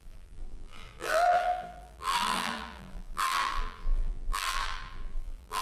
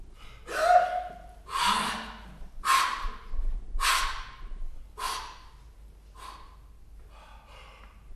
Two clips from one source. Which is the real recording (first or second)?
second